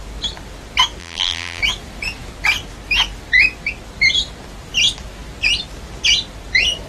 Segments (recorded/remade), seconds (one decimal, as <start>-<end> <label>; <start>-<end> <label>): 0.0-1.0 recorded; 1.0-1.6 remade; 1.6-6.9 recorded